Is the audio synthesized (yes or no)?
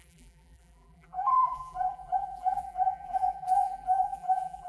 yes